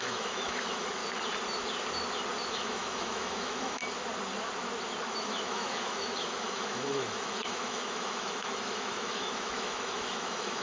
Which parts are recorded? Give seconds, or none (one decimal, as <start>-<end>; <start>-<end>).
1.0-2.5; 3.8-5.2